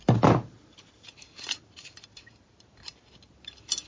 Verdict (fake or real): real